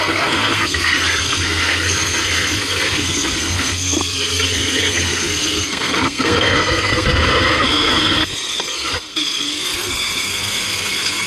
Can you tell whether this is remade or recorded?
remade